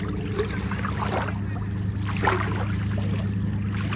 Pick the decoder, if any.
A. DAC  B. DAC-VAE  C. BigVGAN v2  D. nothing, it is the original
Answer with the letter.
D